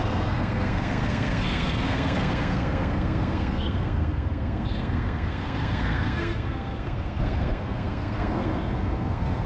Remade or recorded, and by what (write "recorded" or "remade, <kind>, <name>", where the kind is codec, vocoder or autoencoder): remade, codec, SNAC